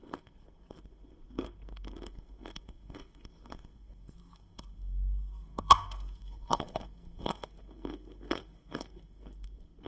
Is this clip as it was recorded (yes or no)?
no